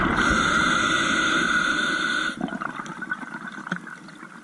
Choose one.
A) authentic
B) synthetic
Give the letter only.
A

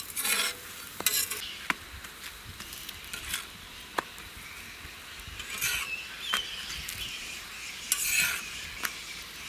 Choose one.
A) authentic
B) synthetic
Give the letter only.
A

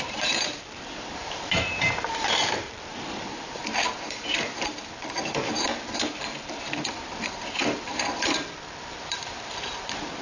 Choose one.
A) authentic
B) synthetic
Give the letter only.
B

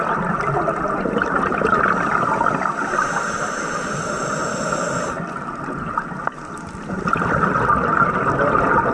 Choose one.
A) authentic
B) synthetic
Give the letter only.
A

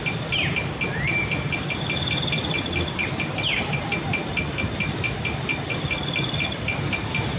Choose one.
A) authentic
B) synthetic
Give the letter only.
A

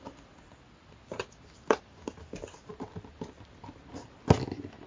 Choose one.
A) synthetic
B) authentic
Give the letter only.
B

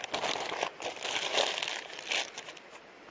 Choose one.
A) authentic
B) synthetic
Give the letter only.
A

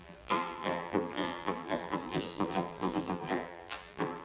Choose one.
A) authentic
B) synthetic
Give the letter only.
B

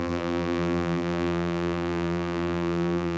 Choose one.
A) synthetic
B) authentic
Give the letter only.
A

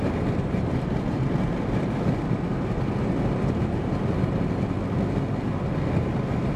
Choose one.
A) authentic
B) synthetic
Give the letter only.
A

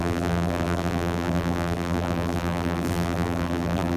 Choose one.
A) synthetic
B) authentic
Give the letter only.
A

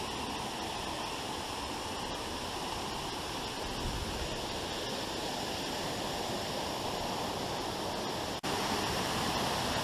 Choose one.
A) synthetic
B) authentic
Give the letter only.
B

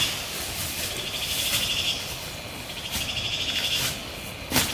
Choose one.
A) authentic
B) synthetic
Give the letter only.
A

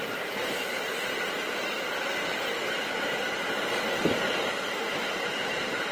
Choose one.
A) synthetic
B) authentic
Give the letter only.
A